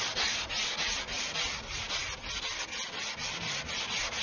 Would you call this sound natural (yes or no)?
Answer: yes